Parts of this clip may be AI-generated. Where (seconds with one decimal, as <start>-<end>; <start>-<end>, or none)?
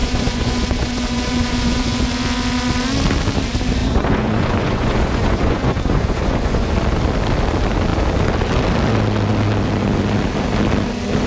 0.0-2.1; 3.8-6.7